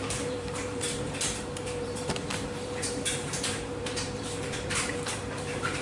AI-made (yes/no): yes